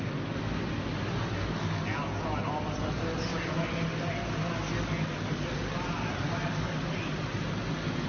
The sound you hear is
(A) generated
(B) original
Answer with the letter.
B